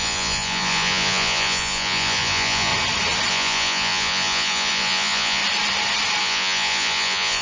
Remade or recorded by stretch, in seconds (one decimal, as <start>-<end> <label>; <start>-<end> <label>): 0.0-2.7 remade; 2.7-3.3 recorded; 3.3-5.4 remade; 5.4-6.2 recorded; 6.2-7.4 remade